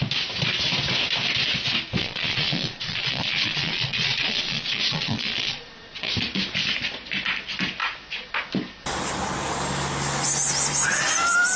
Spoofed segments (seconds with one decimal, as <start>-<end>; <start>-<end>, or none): 2.0-6.1